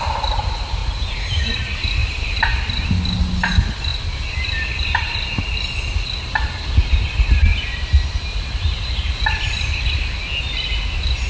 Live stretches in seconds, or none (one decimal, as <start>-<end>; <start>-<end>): 0.0-0.8; 1.6-2.0; 2.9-7.5; 8.9-11.3